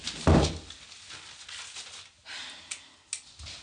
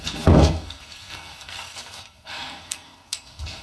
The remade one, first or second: second